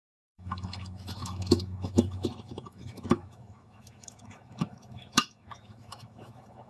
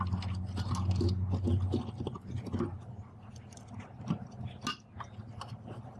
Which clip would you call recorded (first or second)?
second